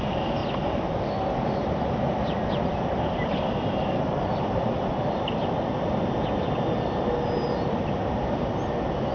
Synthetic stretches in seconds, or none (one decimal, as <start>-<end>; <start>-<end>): 0.4-5.2